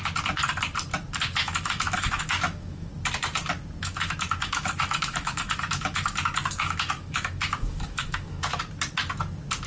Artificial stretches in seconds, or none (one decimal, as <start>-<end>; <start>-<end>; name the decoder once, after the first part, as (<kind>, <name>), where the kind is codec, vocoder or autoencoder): 1.4-2.9 (autoencoder, DAC-VAE); 3.8-8.6